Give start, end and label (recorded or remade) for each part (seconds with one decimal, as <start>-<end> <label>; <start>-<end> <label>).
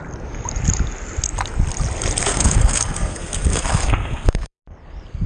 0.0-2.2 recorded; 2.2-4.6 remade; 4.6-5.3 recorded